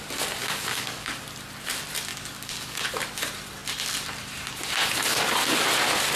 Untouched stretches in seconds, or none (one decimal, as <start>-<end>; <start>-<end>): 0.0-0.4; 1.2-2.1; 2.8-6.2